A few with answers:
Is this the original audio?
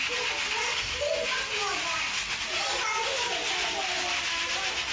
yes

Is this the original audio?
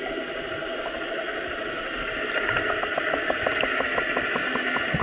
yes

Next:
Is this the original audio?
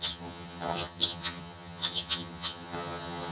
no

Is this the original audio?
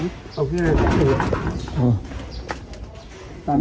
yes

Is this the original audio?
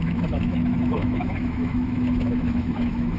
no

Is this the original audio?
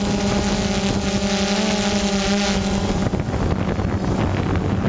yes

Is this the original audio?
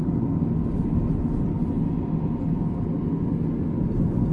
yes